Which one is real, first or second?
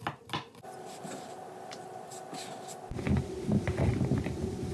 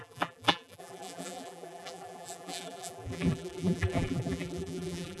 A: first